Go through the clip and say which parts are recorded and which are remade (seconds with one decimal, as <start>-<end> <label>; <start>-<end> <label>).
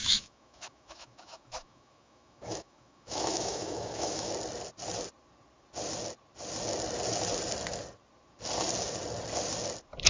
0.0-4.3 remade; 4.3-10.1 recorded